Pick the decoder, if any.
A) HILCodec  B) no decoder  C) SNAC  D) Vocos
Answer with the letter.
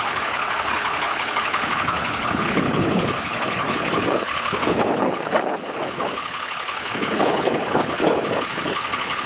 A